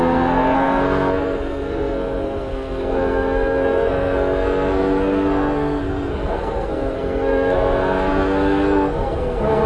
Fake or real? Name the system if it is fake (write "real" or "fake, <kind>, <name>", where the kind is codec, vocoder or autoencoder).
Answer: fake, codec, SNAC